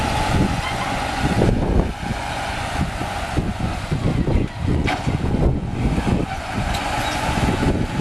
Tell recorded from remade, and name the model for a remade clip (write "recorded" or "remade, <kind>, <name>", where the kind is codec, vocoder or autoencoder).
remade, vocoder, Vocos